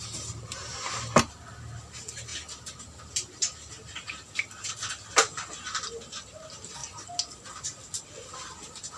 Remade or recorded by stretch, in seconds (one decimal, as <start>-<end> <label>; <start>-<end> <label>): 0.0-9.0 recorded